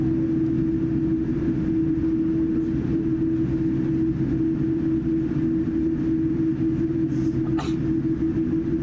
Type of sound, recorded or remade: recorded